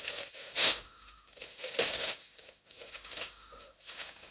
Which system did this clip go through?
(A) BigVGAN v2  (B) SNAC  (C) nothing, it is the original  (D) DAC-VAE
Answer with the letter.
D